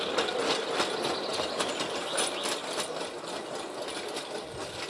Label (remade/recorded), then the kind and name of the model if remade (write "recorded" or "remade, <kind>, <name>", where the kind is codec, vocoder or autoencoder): recorded